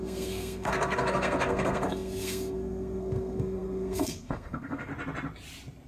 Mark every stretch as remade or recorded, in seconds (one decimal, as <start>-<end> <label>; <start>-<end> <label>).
0.0-4.9 remade; 4.9-5.9 recorded